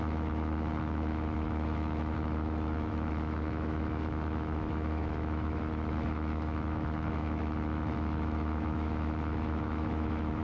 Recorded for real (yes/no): no